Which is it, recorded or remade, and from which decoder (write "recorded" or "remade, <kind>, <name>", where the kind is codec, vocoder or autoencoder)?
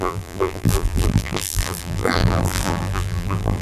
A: remade, vocoder, BigVGAN v2